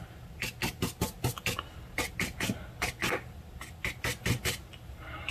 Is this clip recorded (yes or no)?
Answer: yes